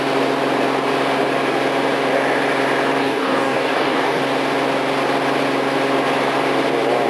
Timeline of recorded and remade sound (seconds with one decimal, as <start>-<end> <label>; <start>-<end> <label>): 0.0-3.0 recorded; 3.0-4.2 remade; 4.2-7.1 recorded